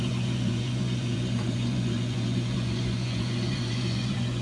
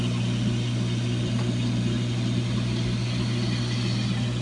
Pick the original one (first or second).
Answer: second